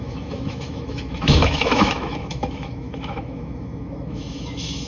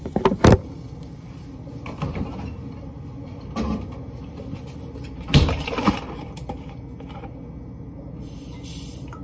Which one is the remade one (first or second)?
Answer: first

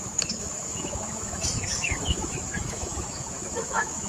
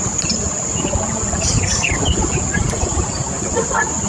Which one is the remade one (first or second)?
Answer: first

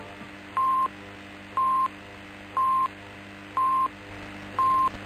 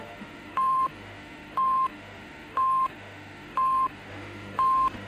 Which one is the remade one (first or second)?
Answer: second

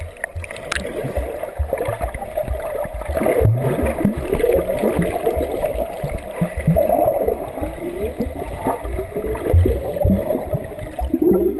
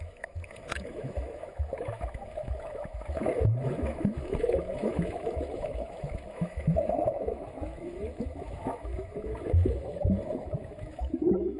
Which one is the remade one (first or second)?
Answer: second